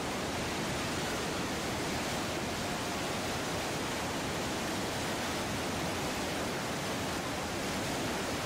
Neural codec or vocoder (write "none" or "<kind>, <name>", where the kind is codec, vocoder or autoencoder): none